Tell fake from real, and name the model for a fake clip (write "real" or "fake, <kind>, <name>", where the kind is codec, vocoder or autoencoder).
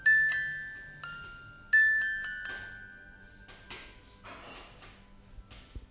real